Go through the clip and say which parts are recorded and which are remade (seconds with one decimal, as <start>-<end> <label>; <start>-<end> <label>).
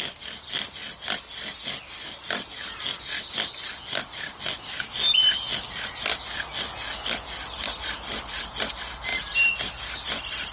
0.0-10.5 recorded